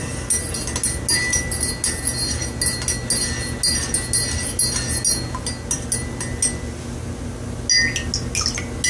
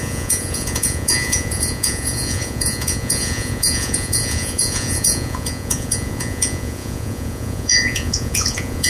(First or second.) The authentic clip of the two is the first